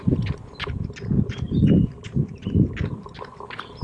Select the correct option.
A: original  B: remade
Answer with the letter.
A